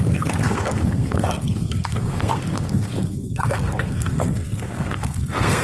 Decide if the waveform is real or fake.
fake